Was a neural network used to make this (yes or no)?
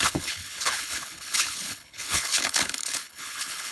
yes